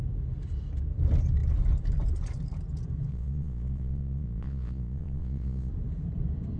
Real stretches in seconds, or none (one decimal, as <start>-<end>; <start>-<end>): 0.0-3.1; 5.7-6.6